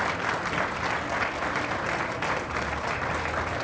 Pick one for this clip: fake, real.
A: real